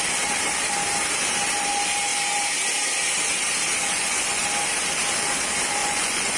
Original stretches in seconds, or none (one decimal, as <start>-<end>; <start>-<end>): 0.0-3.8; 4.4-5.8